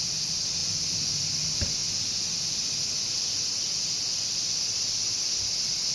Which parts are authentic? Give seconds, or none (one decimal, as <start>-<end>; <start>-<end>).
0.0-5.9